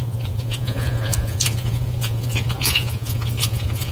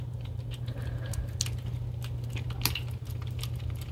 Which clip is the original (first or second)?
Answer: second